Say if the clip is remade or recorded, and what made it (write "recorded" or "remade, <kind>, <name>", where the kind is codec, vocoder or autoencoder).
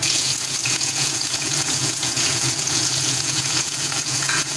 remade, vocoder, Vocos